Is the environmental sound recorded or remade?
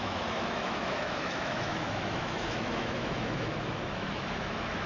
remade